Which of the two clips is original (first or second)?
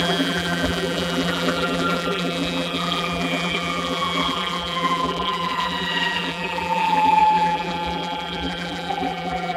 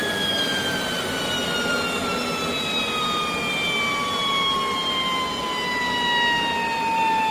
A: second